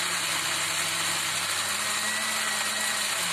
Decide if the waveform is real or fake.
real